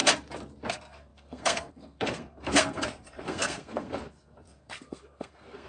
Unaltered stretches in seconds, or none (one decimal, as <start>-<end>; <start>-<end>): 0.0-0.7